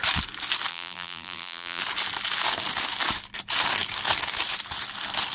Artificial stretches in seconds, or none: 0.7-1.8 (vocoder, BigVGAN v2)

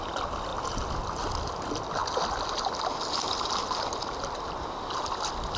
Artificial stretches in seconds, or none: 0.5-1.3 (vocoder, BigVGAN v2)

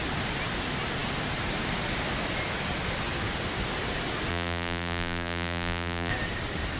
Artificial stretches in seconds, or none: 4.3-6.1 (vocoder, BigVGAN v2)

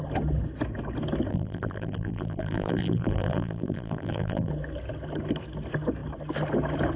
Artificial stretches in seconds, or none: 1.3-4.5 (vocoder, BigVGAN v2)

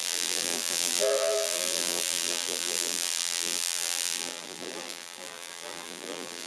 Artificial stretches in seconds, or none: 0.0-6.5 (vocoder, BigVGAN v2)